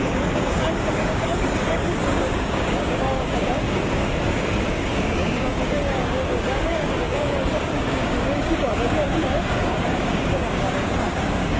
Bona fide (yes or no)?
no